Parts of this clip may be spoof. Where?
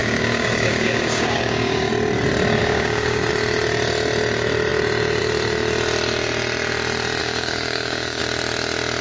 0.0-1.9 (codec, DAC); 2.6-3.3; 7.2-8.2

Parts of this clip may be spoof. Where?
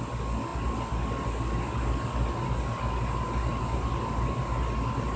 none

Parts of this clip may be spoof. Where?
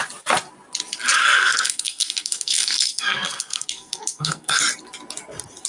1.2-4.6 (codec, SNAC)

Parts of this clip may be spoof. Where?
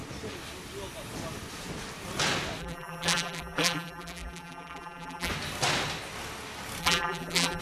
2.6-5.3 (vocoder, BigVGAN v2); 6.8-7.6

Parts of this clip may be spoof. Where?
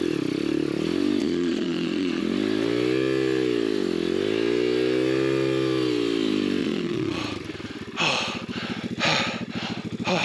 1.2-2.2 (vocoder, Vocos); 6.6-7.2